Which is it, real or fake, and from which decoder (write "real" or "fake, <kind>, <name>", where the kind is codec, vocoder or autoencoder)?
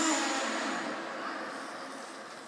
real